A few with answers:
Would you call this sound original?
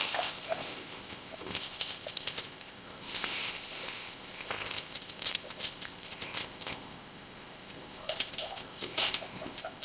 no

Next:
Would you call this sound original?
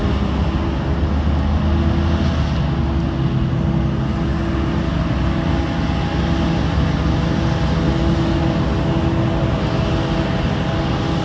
yes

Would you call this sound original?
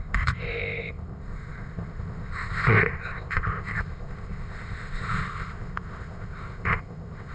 no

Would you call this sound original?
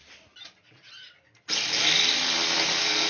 yes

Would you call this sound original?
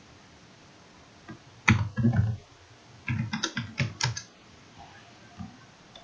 yes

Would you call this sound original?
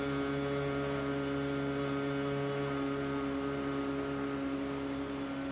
yes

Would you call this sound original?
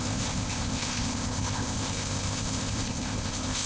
no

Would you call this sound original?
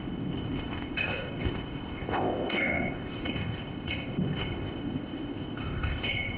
no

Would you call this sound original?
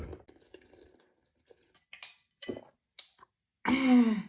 yes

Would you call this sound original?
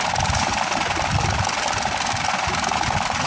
yes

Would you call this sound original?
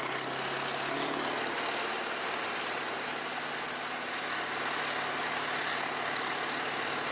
yes